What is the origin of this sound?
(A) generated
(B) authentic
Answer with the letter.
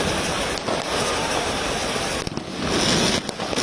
B